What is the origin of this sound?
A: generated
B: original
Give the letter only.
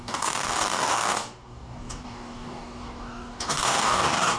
A